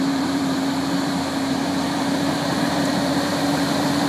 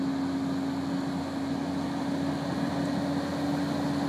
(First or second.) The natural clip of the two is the second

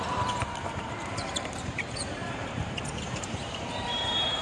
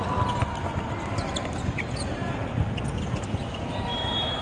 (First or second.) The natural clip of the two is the second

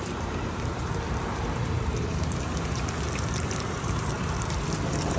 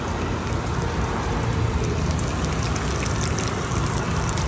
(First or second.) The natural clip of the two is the second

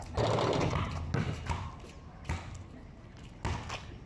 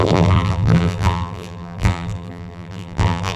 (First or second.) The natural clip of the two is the first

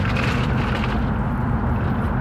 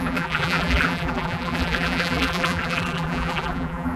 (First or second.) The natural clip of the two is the first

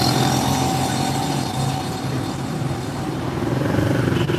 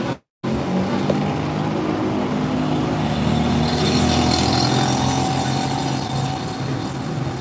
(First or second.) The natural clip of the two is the second